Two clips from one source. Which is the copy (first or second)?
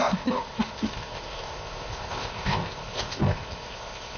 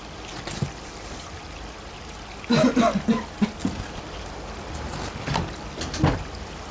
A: first